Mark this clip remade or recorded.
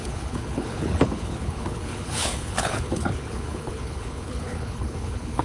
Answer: remade